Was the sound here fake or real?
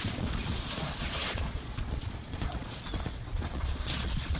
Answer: fake